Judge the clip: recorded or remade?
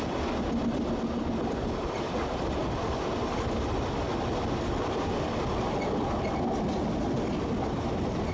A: recorded